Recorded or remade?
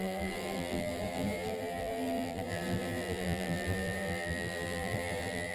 remade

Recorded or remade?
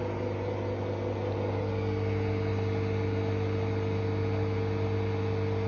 recorded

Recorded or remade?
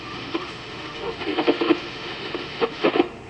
remade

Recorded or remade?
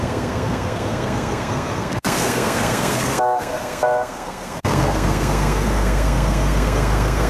remade